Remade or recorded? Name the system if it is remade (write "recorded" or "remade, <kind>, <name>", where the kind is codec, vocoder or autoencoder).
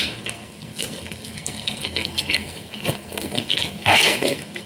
remade, codec, SNAC